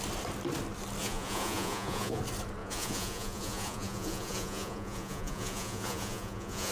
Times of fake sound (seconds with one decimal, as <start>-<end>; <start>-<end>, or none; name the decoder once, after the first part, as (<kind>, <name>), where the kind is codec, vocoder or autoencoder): 1.0-2.2 (vocoder, Vocos); 2.6-6.7